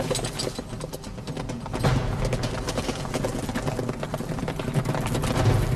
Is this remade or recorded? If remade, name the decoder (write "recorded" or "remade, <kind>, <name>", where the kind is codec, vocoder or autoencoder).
recorded